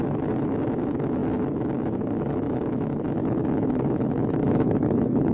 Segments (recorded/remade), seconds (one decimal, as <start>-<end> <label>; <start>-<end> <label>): 0.0-5.3 remade